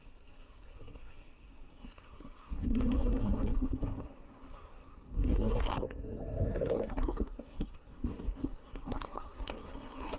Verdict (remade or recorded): remade